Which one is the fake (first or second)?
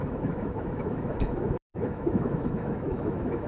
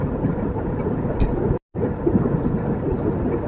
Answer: first